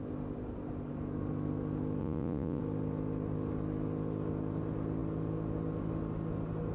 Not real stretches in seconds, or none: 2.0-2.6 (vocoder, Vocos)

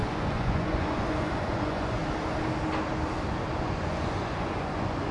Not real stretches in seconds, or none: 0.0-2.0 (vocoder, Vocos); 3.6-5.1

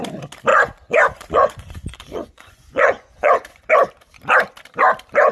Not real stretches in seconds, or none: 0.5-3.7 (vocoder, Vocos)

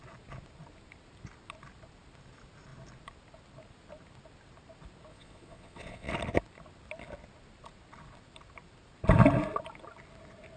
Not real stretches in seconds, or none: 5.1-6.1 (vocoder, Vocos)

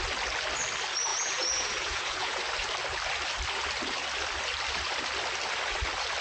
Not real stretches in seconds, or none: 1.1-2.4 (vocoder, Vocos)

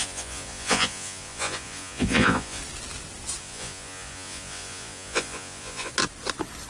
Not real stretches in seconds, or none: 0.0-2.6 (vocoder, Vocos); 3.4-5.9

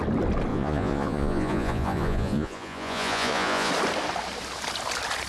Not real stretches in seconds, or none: 0.5-3.7 (vocoder, Vocos)